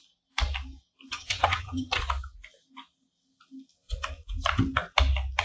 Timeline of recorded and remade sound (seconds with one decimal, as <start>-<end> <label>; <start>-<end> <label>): 0.0-1.1 recorded; 1.1-2.0 remade; 2.0-5.4 recorded